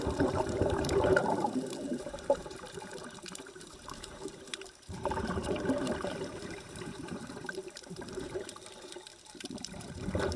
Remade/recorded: remade